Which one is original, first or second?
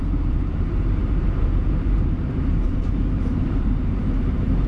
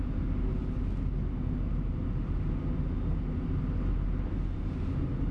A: second